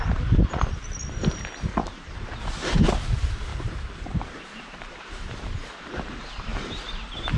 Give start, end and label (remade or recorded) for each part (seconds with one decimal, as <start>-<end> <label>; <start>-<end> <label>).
0.0-1.7 recorded; 1.7-2.2 remade; 2.2-3.5 recorded; 3.5-6.0 remade; 6.0-6.5 recorded; 6.5-7.4 remade